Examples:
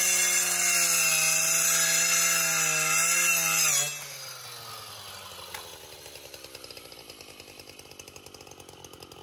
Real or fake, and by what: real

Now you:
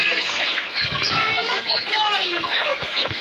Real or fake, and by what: fake, codec, SNAC